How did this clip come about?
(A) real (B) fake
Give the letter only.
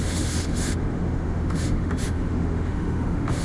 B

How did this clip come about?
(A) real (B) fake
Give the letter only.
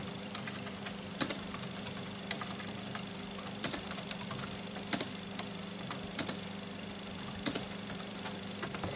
B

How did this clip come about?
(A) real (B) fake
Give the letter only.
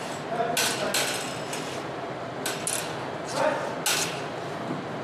A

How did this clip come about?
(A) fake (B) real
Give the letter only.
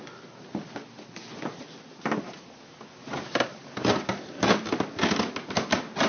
B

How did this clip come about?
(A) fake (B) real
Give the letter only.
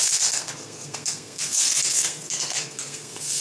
A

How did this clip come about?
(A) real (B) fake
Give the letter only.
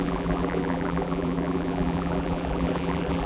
B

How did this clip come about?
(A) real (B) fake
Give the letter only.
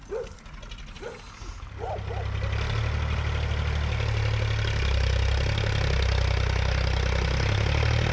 A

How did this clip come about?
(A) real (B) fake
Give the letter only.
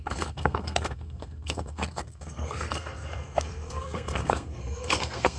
B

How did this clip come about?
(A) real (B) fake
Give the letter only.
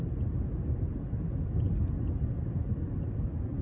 A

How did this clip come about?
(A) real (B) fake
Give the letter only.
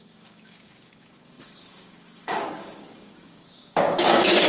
B